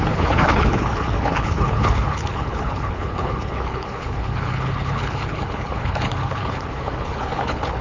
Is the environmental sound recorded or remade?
remade